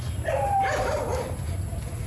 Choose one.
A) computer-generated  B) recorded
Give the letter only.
A